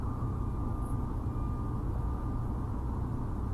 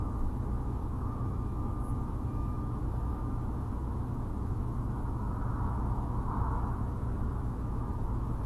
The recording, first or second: first